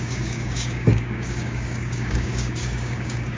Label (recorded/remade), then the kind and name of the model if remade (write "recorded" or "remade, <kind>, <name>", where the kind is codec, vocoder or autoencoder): remade, codec, DAC